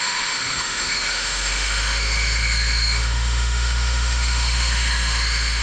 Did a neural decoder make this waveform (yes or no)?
yes